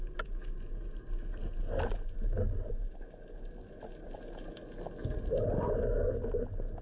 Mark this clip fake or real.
real